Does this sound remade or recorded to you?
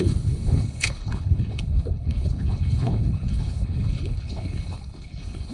remade